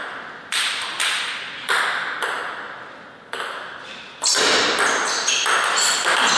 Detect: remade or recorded recorded